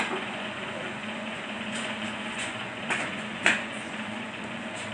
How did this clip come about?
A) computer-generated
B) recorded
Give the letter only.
A